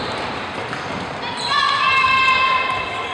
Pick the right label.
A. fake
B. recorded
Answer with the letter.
B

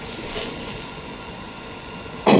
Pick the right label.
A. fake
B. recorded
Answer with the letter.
A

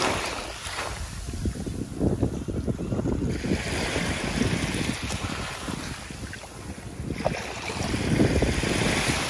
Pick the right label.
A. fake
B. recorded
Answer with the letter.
B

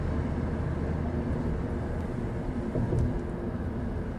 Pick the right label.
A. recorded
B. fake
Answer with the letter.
A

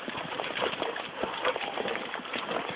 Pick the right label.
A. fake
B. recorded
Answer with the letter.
B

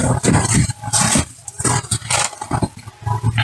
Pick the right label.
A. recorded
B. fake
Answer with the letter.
A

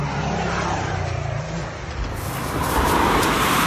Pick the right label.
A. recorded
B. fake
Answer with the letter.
A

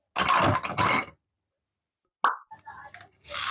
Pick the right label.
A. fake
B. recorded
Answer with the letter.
B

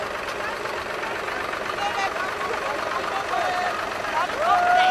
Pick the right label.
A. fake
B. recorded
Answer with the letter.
B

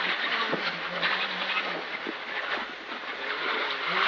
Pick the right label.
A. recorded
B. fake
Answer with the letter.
A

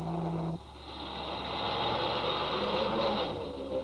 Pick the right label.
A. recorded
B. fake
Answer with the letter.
A